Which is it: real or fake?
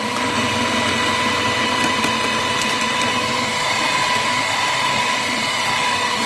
fake